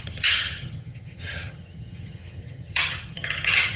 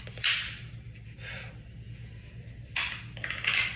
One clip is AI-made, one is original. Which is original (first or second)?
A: second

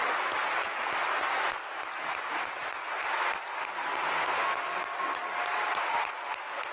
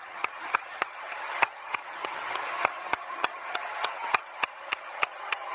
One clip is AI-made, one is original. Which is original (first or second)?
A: first